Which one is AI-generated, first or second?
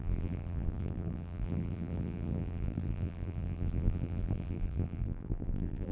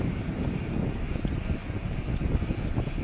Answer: first